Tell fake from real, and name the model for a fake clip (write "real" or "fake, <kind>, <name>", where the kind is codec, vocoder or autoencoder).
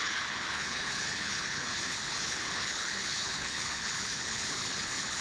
fake, codec, HILCodec